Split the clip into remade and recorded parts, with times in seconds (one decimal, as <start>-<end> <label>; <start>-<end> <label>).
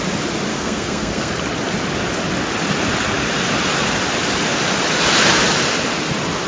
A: 0.0-0.5 recorded; 0.5-1.3 remade; 1.3-6.5 recorded